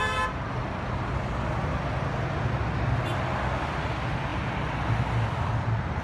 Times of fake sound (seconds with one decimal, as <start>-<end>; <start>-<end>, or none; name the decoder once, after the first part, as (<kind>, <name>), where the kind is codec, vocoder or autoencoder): none